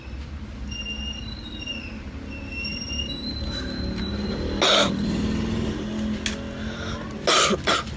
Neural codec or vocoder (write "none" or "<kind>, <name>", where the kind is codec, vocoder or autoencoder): none